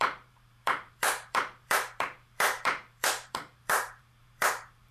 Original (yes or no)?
no